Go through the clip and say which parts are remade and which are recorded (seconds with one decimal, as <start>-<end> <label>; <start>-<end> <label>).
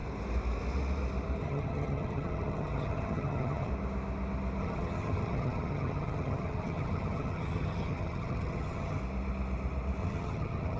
0.0-1.4 recorded; 1.4-3.7 remade; 3.7-4.6 recorded; 4.6-9.0 remade; 9.0-10.0 recorded; 10.0-10.8 remade